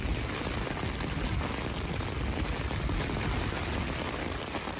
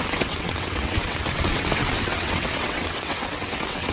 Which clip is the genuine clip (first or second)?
first